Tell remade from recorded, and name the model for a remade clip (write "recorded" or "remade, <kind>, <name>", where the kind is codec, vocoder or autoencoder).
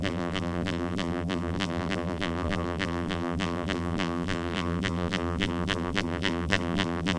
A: remade, vocoder, BigVGAN v2